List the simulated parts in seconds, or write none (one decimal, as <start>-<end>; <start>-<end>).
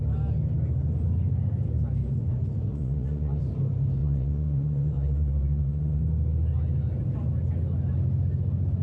2.7-3.4; 4.0-6.0